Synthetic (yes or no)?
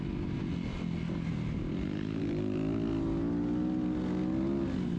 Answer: no